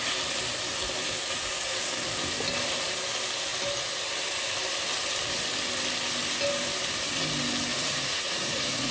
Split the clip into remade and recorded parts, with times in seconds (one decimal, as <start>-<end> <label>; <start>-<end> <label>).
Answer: 0.0-7.7 recorded; 7.7-8.9 remade